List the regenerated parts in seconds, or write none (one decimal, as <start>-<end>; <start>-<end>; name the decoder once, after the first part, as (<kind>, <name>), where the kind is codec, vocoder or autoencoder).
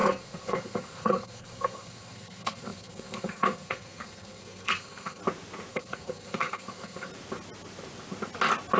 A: 0.0-5.2 (codec, SNAC); 5.7-7.1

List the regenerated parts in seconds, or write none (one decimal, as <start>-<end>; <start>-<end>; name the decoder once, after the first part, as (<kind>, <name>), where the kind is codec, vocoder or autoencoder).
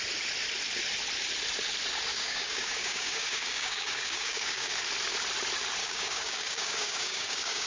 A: 2.1-4.7 (codec, DAC); 5.8-7.7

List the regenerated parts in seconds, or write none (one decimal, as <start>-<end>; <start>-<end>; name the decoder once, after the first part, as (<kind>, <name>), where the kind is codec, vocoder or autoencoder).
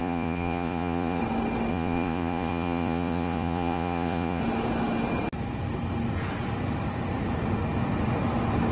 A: 0.0-1.2 (vocoder, Vocos); 1.7-4.4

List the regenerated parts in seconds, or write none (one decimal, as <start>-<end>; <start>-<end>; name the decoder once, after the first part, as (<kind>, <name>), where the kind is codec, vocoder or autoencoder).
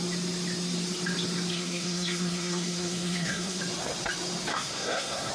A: 1.5-3.6 (codec, SNAC); 4.5-5.3